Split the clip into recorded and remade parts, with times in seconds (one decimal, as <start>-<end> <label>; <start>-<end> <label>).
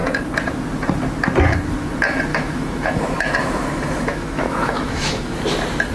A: 0.0-2.3 recorded; 2.3-5.4 remade; 5.4-5.9 recorded